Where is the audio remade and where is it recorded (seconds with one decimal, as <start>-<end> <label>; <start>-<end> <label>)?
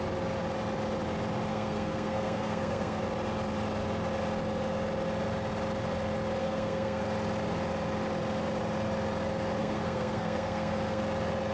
0.0-1.5 recorded; 1.5-3.0 remade; 3.0-6.4 recorded; 6.4-7.0 remade; 7.0-9.6 recorded; 9.6-11.0 remade; 11.0-11.5 recorded